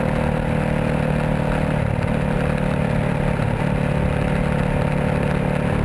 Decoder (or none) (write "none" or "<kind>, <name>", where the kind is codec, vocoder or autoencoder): none